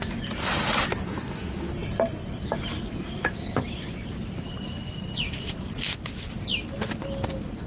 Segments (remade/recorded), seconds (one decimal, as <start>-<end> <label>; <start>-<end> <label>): 0.0-1.1 recorded; 1.1-1.7 remade; 1.7-7.7 recorded